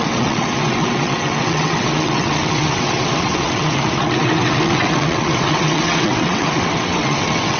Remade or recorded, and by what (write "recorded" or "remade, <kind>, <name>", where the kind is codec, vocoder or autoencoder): remade, vocoder, WaveNeXt